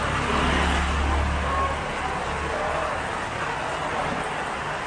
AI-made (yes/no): no